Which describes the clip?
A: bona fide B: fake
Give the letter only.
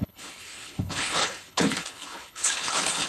B